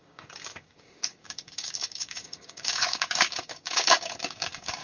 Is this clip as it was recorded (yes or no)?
no